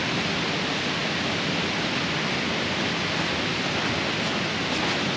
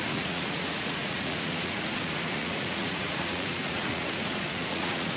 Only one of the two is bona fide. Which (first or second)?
first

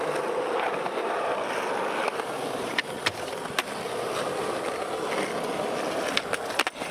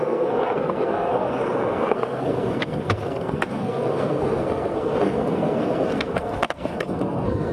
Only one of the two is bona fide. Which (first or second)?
first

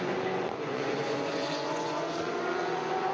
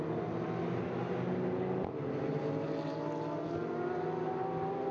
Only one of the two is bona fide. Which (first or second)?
second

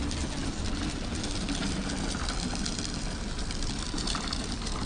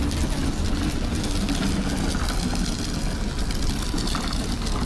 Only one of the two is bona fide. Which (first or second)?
second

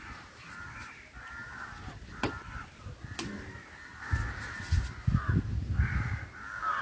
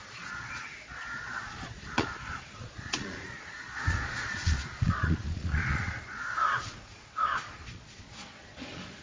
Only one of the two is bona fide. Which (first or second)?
first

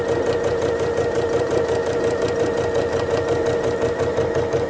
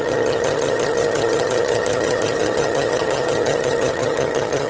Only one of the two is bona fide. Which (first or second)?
first